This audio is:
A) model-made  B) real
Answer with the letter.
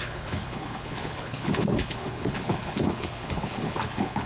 A